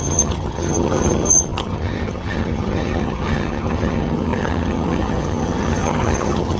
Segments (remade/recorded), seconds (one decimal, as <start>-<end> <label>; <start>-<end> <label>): 0.0-6.6 remade

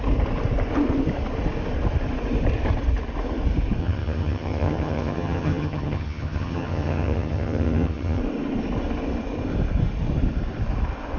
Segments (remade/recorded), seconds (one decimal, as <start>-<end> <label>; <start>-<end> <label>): 0.0-3.8 recorded; 3.8-8.2 remade; 8.2-11.2 recorded

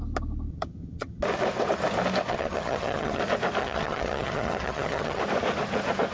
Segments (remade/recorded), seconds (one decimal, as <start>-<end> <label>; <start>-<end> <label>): 0.0-0.5 recorded; 0.5-1.2 remade; 1.2-2.3 recorded; 2.3-3.2 remade; 3.2-3.6 recorded; 3.6-5.2 remade; 5.2-6.1 recorded